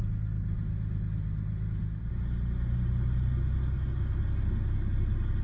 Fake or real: real